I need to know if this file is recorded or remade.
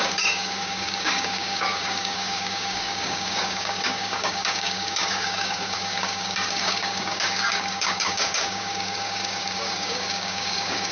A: remade